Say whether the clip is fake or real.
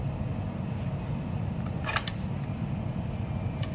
fake